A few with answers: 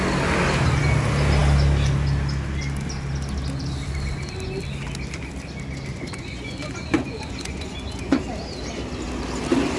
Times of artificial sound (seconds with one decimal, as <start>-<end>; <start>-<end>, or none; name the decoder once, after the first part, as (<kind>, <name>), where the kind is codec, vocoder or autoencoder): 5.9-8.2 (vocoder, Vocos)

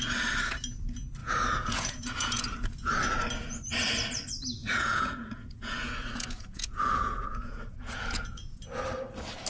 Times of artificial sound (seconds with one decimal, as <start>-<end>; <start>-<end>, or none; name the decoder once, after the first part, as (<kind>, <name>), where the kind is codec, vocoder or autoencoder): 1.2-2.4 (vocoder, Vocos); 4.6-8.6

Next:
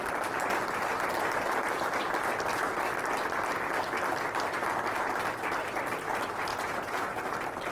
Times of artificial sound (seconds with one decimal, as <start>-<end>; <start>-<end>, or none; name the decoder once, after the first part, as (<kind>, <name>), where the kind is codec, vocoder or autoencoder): 6.5-7.2 (vocoder, Vocos)